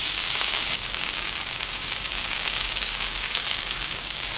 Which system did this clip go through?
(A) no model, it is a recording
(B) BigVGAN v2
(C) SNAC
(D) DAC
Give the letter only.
D